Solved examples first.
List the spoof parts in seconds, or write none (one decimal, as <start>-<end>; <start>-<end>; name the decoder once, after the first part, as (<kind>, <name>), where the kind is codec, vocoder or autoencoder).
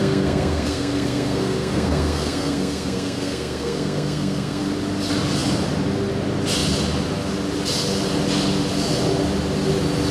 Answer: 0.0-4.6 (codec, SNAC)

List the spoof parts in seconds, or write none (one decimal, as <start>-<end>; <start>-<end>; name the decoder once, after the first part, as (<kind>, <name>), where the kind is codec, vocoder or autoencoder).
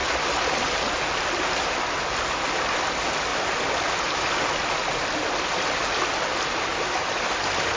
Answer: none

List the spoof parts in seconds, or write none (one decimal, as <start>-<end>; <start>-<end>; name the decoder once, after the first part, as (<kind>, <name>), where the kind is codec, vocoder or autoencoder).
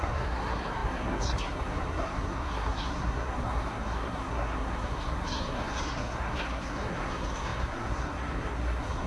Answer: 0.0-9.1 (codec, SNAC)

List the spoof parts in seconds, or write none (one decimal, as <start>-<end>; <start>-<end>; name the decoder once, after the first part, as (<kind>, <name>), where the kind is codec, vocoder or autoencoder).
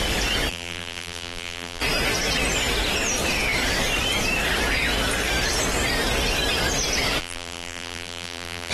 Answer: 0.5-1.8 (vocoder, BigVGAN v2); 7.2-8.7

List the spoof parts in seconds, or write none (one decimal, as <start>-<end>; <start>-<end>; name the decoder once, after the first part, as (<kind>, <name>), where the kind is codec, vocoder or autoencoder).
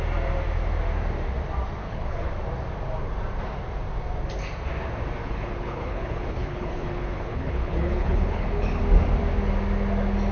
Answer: 1.8-2.3 (codec, HILCodec); 5.2-8.8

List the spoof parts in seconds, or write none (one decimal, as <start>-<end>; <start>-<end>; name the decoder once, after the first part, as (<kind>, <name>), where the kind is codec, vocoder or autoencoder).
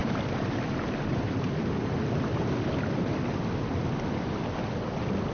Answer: none